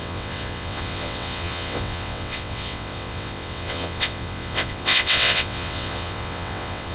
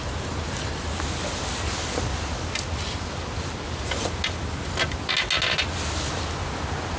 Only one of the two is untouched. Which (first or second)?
second